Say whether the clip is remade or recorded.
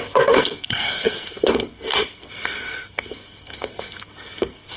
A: remade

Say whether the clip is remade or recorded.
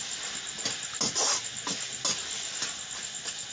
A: recorded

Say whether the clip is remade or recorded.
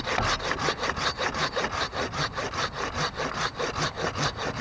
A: recorded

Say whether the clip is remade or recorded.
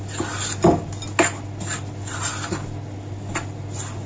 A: recorded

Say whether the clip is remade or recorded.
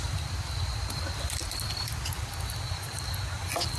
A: recorded